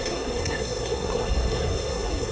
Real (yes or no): no